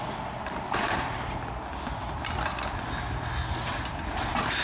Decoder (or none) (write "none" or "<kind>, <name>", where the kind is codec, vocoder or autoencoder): none